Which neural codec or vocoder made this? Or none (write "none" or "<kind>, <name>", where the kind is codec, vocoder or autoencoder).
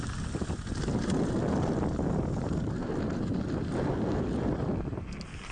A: none